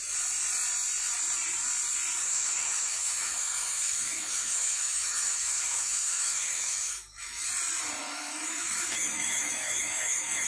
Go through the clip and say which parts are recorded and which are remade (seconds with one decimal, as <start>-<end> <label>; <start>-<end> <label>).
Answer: 0.0-2.2 recorded; 2.2-7.5 remade; 7.5-8.0 recorded; 8.0-10.5 remade

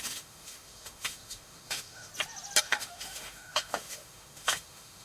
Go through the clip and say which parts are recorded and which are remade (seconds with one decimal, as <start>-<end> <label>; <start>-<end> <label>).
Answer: 0.0-2.1 remade; 2.1-2.6 recorded; 2.6-5.0 remade

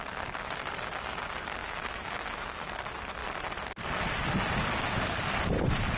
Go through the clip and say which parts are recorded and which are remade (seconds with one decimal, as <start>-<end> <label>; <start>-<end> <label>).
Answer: 0.0-1.6 recorded; 1.6-2.7 remade; 2.7-6.0 recorded

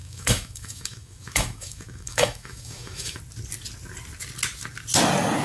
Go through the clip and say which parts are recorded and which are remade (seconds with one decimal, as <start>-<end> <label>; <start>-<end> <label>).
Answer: 0.0-3.2 remade; 3.2-5.4 recorded

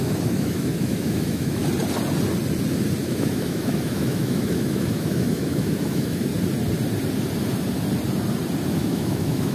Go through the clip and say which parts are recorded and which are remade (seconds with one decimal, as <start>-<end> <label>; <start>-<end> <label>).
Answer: 0.0-1.6 remade; 1.6-3.0 recorded; 3.0-6.3 remade; 6.3-8.7 recorded; 8.7-9.5 remade

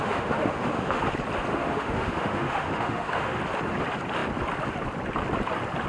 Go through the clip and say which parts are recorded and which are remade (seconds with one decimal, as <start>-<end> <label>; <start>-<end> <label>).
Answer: 0.0-1.0 remade; 1.0-1.5 recorded; 1.5-3.4 remade; 3.4-5.9 recorded